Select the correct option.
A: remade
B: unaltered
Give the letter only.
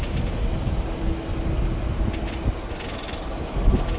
B